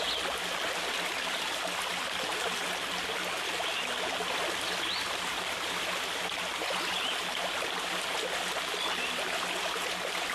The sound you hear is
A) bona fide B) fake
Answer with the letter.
A